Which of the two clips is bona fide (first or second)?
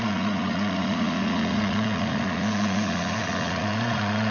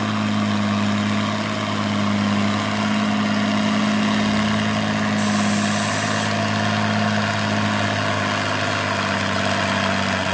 second